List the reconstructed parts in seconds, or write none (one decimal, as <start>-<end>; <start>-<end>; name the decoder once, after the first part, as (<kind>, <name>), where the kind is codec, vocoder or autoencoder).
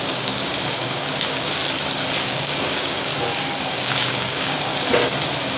0.0-1.6 (codec, DAC); 2.2-3.1; 3.7-4.7